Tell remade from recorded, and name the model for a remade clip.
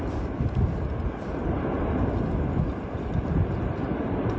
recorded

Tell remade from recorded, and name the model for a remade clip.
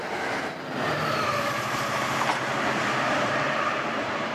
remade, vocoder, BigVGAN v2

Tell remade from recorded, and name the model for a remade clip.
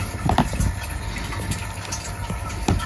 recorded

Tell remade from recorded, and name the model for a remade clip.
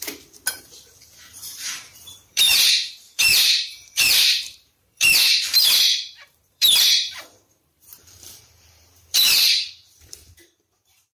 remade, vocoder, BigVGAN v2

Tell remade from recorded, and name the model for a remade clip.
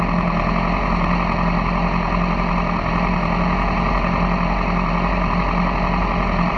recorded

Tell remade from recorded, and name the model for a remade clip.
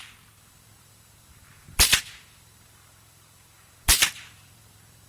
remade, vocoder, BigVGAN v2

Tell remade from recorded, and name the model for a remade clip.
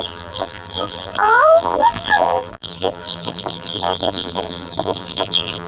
remade, vocoder, BigVGAN v2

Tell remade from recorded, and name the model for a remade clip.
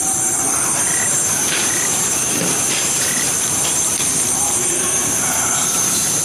remade, vocoder, BigVGAN v2